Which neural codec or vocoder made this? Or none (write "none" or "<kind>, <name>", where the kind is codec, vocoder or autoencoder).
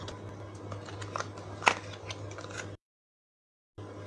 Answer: none